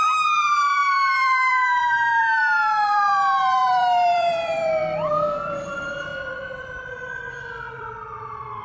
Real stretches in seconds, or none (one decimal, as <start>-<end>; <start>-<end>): none